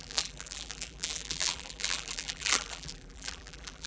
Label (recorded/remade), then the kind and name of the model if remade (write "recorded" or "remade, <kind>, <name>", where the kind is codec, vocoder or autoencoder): remade, vocoder, BigVGAN v2